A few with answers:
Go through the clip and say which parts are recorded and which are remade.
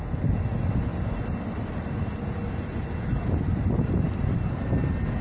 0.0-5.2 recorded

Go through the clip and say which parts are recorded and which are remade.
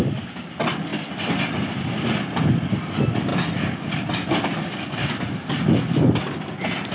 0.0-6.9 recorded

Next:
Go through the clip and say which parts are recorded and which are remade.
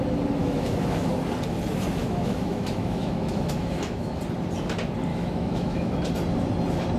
0.0-0.4 recorded; 0.4-1.1 remade; 1.1-2.0 recorded; 2.0-4.2 remade; 4.2-5.1 recorded; 5.1-6.0 remade; 6.0-7.0 recorded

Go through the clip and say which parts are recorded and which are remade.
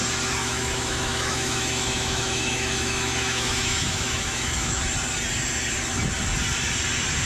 0.0-0.4 recorded; 0.4-4.8 remade; 4.8-7.3 recorded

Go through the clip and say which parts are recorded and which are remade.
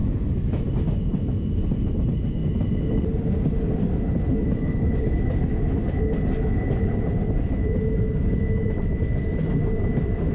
0.0-0.7 remade; 0.7-10.3 recorded